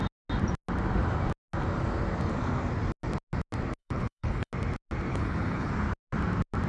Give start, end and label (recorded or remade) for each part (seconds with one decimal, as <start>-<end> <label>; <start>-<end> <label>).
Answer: 0.0-3.8 recorded; 3.8-4.5 remade; 4.5-5.1 recorded; 5.1-5.7 remade; 5.7-6.7 recorded